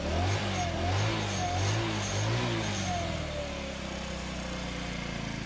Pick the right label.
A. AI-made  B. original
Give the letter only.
B